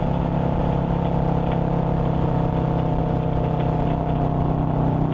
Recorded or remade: recorded